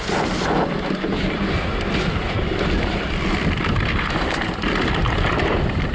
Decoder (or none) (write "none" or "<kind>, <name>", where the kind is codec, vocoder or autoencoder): none